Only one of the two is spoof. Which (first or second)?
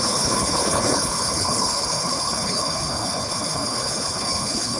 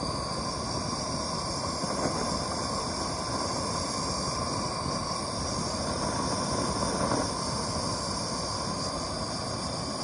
first